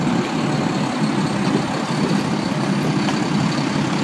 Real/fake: real